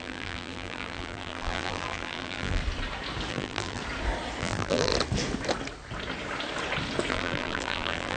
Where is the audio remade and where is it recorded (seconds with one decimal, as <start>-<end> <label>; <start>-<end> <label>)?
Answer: 0.0-2.6 remade; 2.6-3.3 recorded; 3.3-3.8 remade; 3.8-4.4 recorded; 4.4-4.9 remade; 4.9-7.1 recorded; 7.1-8.2 remade